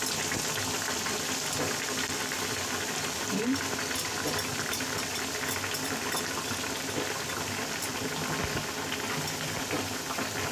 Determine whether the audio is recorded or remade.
recorded